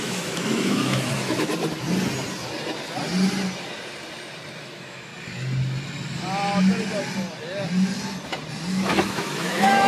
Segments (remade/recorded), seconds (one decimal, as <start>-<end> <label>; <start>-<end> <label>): 0.0-1.5 remade; 1.5-4.6 recorded; 4.6-5.1 remade; 5.1-8.7 recorded; 8.7-9.9 remade